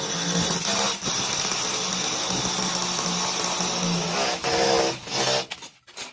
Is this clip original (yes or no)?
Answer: yes